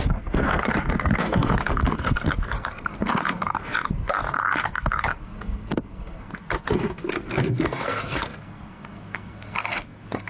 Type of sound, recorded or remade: remade